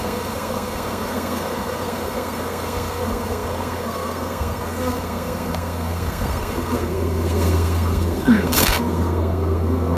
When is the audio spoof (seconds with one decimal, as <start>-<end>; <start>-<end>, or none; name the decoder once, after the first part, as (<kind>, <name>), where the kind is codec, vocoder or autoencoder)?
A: 0.0-10.0 (codec, SNAC)